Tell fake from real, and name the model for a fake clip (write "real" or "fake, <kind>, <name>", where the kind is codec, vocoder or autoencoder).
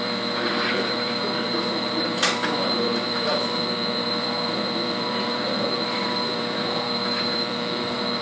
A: fake, vocoder, BigVGAN v2